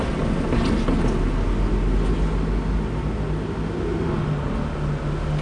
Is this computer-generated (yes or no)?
no